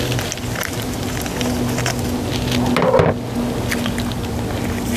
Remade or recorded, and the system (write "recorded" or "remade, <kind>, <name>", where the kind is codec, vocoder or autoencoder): recorded